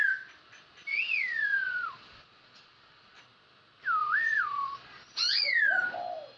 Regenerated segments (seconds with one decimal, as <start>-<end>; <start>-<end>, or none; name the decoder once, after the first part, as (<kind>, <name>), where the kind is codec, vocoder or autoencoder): 0.9-3.2 (vocoder, Vocos); 4.0-5.4